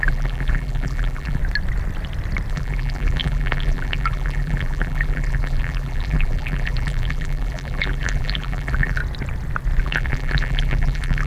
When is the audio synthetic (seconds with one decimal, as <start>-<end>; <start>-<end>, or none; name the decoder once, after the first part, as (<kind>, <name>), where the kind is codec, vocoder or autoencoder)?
0.0-1.4 (vocoder, BigVGAN v2); 2.5-9.0; 9.8-11.3

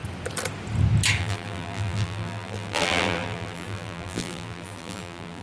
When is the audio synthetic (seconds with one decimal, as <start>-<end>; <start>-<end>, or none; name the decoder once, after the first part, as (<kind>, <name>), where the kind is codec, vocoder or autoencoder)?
1.2-5.4 (vocoder, BigVGAN v2)

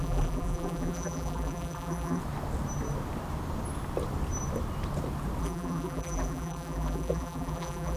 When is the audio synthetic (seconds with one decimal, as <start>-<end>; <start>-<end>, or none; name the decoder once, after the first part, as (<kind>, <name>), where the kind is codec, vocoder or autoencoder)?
0.0-2.2 (vocoder, BigVGAN v2); 5.4-8.0

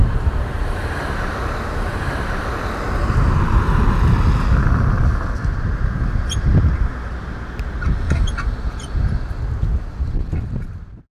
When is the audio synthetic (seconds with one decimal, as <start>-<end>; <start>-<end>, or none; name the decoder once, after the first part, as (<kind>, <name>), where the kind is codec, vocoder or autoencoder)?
0.0-2.6 (vocoder, BigVGAN v2)

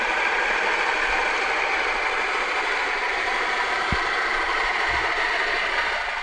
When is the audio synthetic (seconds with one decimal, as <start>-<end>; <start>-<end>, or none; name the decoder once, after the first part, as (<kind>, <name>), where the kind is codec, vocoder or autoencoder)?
3.1-5.1 (vocoder, BigVGAN v2)